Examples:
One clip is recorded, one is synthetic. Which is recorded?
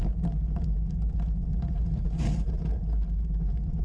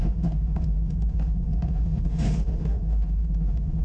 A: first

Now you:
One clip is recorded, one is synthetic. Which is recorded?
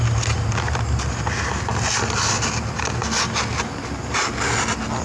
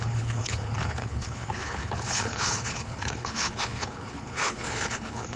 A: first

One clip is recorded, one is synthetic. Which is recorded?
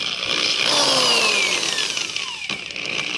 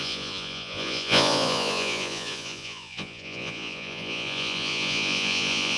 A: first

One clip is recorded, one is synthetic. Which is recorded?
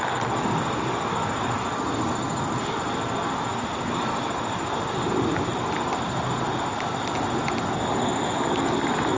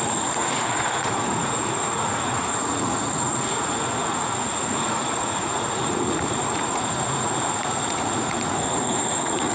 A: first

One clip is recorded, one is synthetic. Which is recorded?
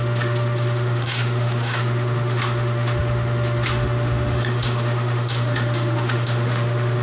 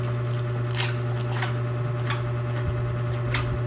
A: second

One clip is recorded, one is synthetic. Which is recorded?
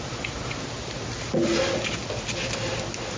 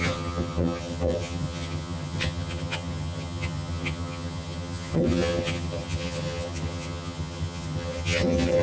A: first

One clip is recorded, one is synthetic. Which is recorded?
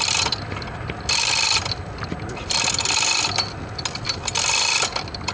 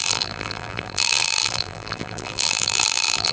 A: first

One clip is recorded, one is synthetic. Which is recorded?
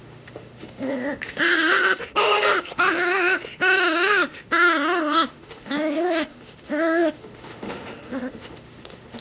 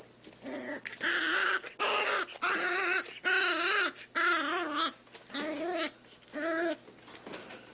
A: second